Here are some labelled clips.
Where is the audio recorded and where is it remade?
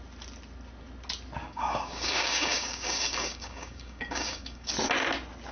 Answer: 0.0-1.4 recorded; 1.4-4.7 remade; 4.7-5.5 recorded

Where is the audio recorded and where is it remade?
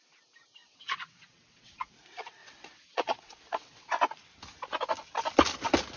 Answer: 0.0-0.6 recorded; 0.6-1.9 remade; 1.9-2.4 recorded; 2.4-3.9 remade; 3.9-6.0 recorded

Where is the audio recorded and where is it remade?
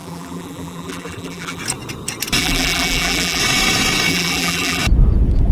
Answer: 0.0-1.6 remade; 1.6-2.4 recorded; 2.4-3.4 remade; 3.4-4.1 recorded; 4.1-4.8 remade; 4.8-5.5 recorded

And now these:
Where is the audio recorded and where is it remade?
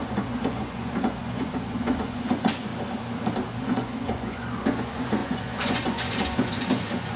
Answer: 0.0-2.7 remade; 2.7-3.6 recorded; 3.6-7.2 remade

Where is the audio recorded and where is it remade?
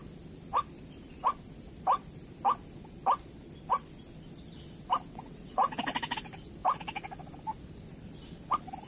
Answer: 0.0-5.1 recorded; 5.1-5.7 remade; 5.7-8.9 recorded